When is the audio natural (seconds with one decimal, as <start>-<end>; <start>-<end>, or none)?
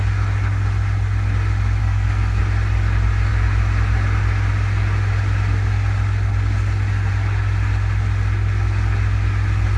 0.0-1.8; 2.4-9.8